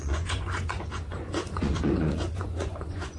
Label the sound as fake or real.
fake